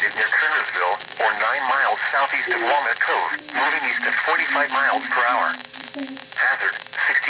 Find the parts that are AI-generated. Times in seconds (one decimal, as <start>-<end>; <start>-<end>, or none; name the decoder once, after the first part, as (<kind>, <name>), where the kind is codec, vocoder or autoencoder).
2.9-3.7 (vocoder, BigVGAN v2)